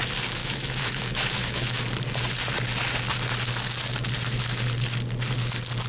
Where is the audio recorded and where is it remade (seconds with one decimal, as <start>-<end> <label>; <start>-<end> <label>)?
0.0-0.4 recorded; 0.4-1.8 remade; 1.8-5.9 recorded